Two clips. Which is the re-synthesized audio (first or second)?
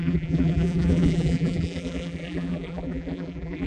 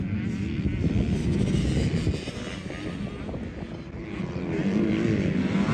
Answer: first